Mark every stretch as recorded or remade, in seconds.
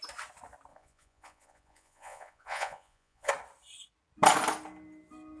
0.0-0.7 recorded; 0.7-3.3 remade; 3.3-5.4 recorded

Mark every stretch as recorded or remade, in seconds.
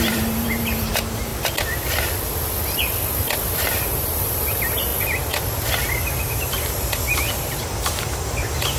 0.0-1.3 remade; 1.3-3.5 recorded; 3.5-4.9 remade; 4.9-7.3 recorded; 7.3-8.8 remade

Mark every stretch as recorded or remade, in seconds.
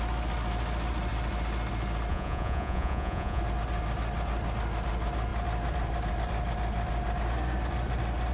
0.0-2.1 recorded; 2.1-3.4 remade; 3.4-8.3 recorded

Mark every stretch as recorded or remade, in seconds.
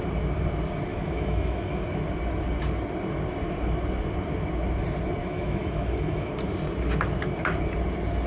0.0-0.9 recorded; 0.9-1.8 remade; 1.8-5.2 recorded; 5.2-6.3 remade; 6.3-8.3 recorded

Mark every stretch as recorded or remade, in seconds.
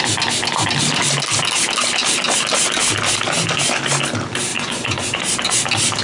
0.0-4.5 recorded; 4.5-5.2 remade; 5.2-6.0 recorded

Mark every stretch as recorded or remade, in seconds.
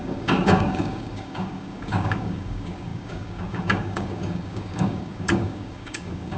0.0-6.4 remade